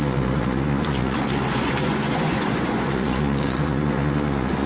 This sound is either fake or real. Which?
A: fake